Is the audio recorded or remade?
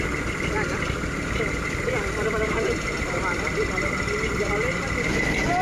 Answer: recorded